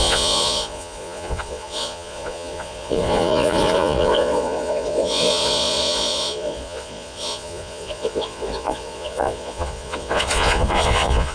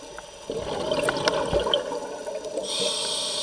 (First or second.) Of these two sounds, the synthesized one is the first